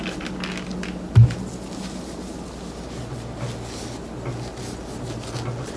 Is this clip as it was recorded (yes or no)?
yes